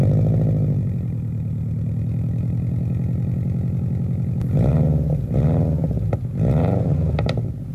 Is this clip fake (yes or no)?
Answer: no